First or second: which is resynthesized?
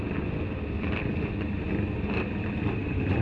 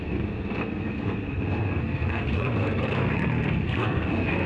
second